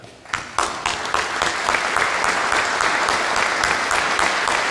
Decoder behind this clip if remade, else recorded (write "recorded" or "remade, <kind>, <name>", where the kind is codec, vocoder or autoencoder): recorded